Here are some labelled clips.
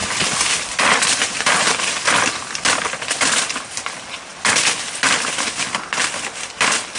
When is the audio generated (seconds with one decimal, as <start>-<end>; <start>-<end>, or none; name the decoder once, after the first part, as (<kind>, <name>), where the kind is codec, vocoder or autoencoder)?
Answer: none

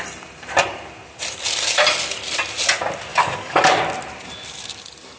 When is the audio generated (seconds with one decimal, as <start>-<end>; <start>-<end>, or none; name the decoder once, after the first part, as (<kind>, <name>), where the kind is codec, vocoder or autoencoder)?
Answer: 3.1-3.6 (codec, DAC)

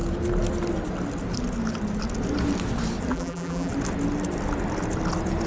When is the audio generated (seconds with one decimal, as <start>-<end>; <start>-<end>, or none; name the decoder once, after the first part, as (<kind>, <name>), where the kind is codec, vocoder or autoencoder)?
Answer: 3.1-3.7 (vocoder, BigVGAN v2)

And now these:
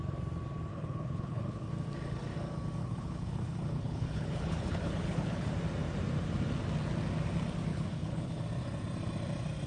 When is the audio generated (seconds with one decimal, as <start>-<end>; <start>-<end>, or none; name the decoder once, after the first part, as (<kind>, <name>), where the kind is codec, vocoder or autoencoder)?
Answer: 0.7-1.7 (codec, HILCodec); 2.8-5.5; 7.7-8.4

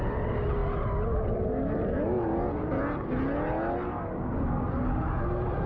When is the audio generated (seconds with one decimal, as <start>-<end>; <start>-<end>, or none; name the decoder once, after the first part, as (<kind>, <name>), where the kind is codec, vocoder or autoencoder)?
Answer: none

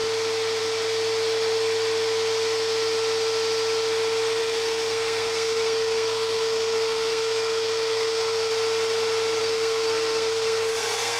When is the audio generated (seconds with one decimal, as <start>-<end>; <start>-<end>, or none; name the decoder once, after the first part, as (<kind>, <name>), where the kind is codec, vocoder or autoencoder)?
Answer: 4.4-8.5 (codec, SNAC); 9.4-11.2

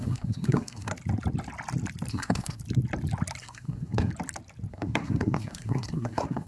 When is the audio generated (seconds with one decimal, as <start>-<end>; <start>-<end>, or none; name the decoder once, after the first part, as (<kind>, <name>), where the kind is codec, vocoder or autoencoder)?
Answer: 0.0-0.9 (codec, SNAC); 2.1-2.6; 3.4-4.1; 4.7-6.5

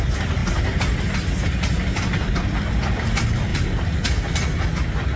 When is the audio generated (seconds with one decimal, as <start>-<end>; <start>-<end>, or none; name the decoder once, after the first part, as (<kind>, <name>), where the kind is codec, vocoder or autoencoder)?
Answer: 3.5-4.2 (vocoder, BigVGAN v2)